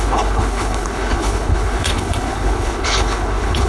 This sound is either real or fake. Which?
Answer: fake